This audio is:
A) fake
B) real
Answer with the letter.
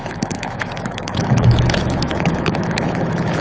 A